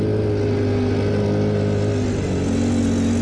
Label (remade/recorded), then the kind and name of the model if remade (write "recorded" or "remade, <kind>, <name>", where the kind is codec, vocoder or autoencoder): recorded